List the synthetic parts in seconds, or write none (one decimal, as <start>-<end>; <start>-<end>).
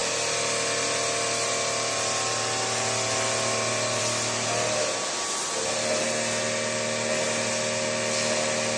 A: none